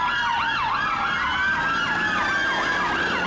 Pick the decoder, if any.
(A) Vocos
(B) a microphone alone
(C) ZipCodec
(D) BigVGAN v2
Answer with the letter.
B